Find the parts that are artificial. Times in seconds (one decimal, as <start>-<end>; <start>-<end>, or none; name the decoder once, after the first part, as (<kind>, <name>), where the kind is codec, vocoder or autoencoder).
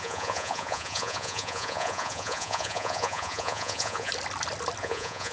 0.0-4.1 (vocoder, Vocos); 4.8-5.3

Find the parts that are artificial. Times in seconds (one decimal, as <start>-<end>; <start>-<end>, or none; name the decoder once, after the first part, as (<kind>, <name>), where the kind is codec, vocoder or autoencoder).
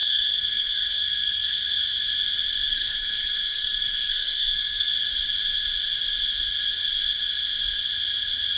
0.0-1.6 (codec, SNAC); 2.7-4.9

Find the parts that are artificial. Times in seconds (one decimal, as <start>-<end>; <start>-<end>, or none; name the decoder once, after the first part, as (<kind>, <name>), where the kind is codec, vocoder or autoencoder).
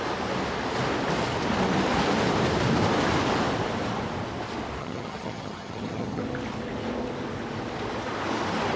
4.8-6.2 (vocoder, HiFi-GAN)